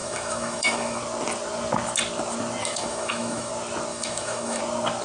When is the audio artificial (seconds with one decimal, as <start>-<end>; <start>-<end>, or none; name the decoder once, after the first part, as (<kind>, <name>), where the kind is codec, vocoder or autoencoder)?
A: 0.0-1.0 (autoencoder, DAC-VAE); 2.6-3.5; 3.9-4.6